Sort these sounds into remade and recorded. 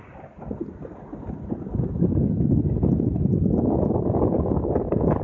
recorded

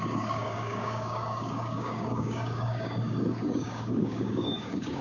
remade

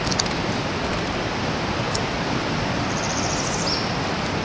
recorded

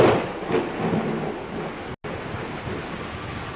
recorded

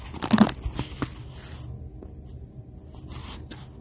recorded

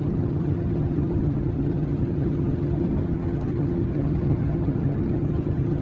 remade